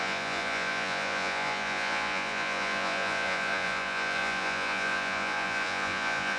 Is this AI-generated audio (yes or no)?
yes